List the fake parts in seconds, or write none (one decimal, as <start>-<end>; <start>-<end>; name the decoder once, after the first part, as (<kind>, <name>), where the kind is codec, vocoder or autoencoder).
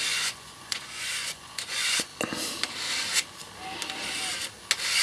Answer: 0.0-2.1 (vocoder, Vocos)